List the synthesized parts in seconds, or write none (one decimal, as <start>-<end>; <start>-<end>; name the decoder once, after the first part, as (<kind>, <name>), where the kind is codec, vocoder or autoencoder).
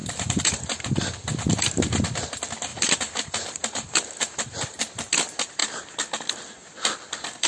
0.0-0.6 (vocoder, BigVGAN v2); 2.7-4.8